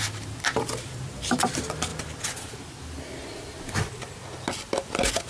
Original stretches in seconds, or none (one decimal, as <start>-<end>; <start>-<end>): 1.9-5.3